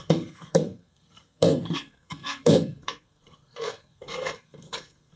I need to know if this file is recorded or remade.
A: remade